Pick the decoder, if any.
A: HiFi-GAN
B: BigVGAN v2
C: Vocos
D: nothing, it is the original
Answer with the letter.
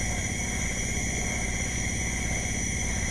C